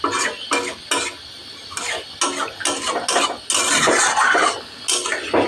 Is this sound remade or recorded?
recorded